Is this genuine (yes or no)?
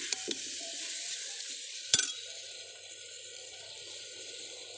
no